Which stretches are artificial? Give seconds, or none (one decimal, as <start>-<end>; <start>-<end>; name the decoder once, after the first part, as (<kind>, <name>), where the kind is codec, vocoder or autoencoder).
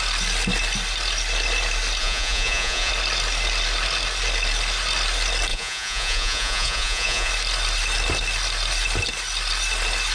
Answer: 2.0-2.9 (vocoder, Vocos); 5.5-7.3